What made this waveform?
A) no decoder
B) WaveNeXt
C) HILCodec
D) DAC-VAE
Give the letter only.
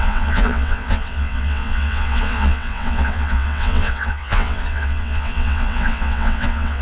B